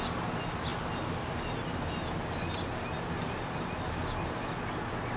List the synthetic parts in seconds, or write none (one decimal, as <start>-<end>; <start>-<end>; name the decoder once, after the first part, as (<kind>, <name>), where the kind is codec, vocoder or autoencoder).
none